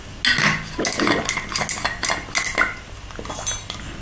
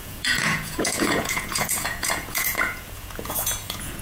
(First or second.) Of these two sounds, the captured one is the first